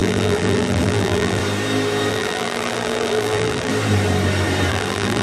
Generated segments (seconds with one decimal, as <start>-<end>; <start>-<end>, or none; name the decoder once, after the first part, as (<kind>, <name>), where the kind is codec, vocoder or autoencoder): 0.0-1.4 (vocoder, BigVGAN v2); 2.1-3.7; 4.7-5.2